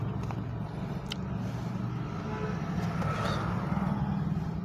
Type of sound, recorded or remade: recorded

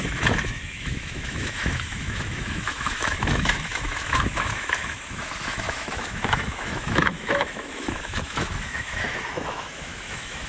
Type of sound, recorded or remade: remade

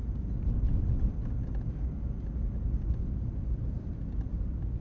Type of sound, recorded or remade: recorded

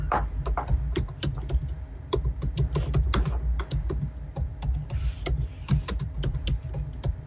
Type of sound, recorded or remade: remade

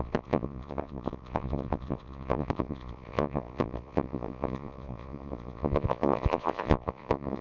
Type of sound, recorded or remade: remade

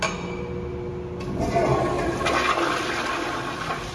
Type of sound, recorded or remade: recorded